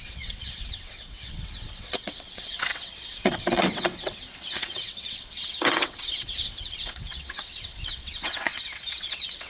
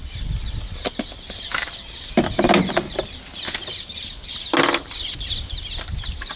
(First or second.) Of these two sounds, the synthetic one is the first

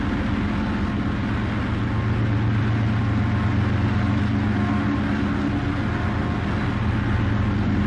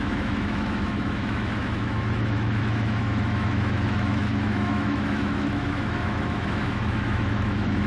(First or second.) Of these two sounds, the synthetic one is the second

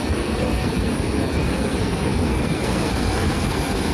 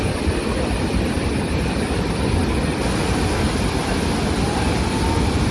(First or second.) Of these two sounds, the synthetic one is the first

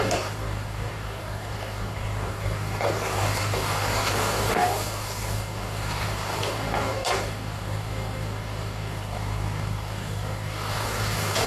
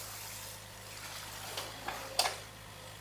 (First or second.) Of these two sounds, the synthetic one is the first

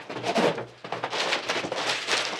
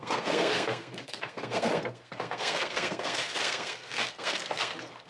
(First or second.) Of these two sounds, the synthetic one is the second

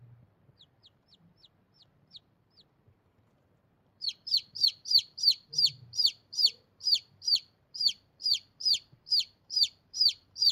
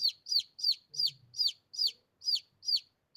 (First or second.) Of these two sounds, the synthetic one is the first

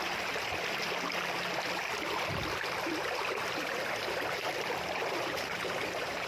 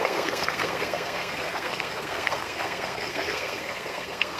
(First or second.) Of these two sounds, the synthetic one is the second